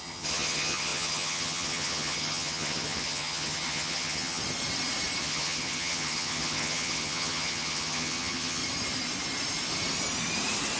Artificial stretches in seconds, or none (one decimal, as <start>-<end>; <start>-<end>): 0.0-4.4; 5.2-8.6